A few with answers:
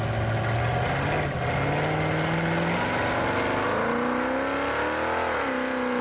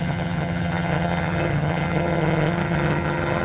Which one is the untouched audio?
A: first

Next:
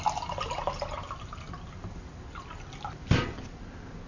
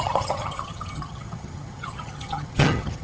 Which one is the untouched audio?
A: first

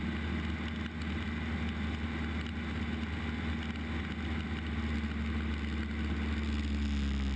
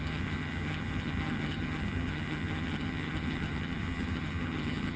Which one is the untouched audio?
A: first